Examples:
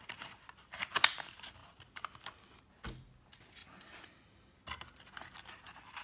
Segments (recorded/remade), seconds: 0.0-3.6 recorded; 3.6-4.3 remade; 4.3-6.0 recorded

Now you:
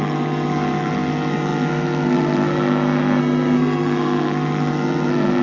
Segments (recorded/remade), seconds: 0.0-5.4 remade

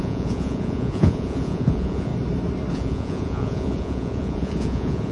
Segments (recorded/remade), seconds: 0.0-2.1 remade; 2.1-2.7 recorded; 2.7-5.1 remade

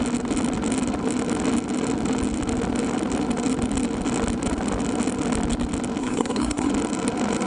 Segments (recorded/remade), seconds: 0.0-6.0 recorded; 6.0-6.7 remade; 6.7-7.5 recorded

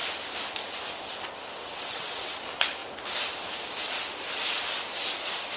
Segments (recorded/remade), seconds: 0.0-1.6 recorded; 1.6-2.4 remade; 2.4-5.6 recorded

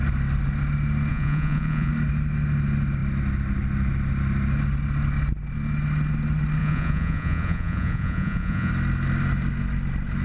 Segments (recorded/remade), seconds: 0.0-1.1 recorded; 1.1-1.9 remade; 1.9-6.6 recorded; 6.6-8.7 remade; 8.7-10.2 recorded